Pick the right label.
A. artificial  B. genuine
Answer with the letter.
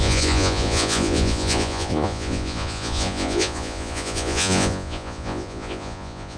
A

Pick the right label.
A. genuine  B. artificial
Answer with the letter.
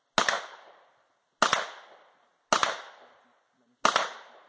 A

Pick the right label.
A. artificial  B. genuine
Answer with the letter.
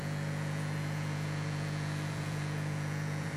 A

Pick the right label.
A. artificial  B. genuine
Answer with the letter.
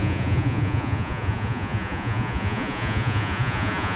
A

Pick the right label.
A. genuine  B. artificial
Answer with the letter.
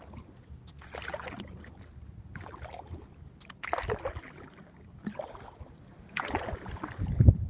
A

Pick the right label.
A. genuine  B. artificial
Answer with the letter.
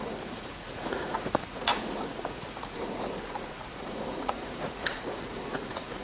B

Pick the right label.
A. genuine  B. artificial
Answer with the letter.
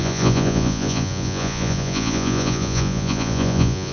B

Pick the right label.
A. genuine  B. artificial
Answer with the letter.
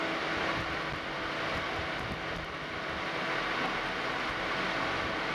A